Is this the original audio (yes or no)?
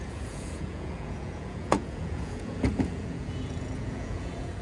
no